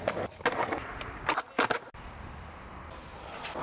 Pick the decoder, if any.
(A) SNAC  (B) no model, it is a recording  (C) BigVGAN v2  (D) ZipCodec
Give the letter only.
B